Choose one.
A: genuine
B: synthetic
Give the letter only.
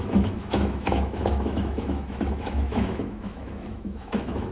B